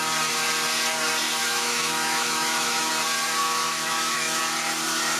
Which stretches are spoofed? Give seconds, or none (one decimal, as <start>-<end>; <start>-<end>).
1.4-2.9; 3.4-4.4